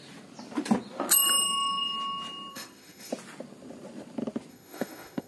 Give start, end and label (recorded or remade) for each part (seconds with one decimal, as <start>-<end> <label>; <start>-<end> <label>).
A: 0.0-2.5 recorded; 2.5-3.1 remade; 3.1-4.5 recorded; 4.5-5.3 remade